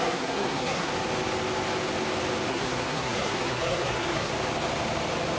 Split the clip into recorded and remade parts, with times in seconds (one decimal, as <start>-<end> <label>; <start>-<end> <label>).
0.0-0.9 remade; 0.9-2.5 recorded; 2.5-4.3 remade; 4.3-5.4 recorded